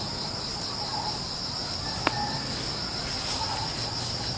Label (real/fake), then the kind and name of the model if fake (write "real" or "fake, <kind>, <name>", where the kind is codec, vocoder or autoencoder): real